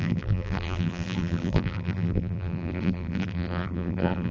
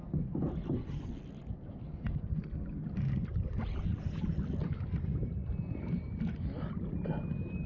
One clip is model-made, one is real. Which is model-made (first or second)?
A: first